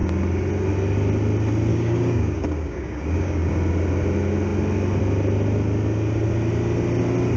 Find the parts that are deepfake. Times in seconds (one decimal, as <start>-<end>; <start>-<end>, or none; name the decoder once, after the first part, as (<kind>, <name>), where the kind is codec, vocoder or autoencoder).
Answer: 1.7-3.5 (codec, DAC)